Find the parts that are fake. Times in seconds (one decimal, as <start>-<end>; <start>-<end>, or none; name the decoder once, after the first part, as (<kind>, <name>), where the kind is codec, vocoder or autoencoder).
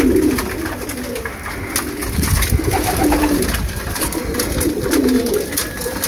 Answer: 2.0-4.2 (vocoder, BigVGAN v2)